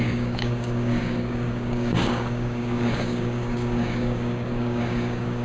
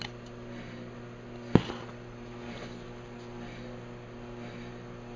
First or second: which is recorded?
second